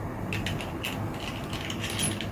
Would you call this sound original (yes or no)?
yes